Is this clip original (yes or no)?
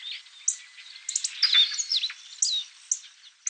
yes